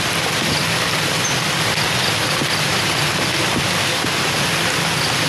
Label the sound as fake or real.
real